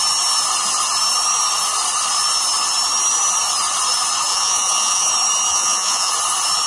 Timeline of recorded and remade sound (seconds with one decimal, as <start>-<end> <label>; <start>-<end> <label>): 0.0-4.3 recorded; 4.3-5.1 remade; 5.1-5.5 recorded; 5.5-6.1 remade; 6.1-6.7 recorded